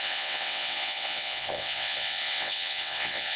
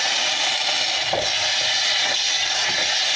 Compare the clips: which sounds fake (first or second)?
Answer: first